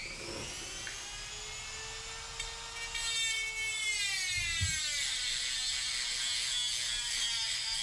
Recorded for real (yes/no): yes